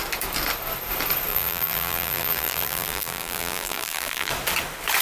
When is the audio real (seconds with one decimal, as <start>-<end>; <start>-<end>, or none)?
0.0-1.3; 4.3-5.0